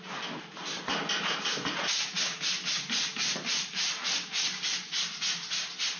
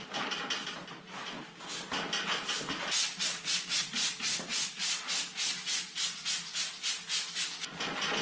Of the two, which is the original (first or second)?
second